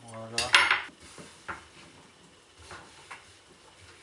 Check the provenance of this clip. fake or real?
real